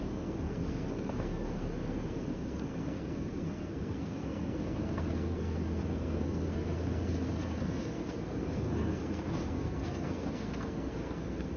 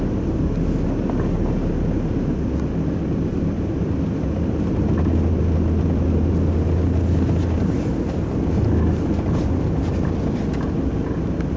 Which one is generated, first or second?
first